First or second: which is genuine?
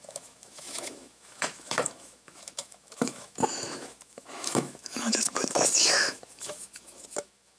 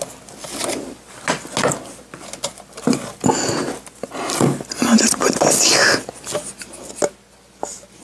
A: second